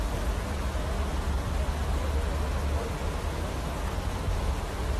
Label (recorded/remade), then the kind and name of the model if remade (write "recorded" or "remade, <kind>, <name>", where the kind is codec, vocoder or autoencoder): recorded